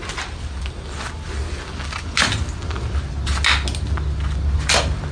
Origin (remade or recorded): recorded